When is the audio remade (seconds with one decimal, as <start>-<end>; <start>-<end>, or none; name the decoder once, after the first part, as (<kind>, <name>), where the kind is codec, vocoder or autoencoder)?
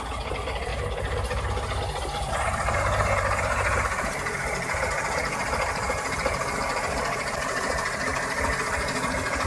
0.0-0.7 (vocoder, BigVGAN v2); 2.3-8.1; 8.6-9.5